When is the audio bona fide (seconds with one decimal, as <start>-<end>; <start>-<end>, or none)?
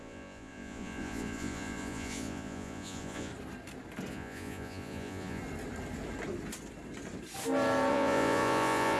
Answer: 3.3-4.1; 5.4-7.9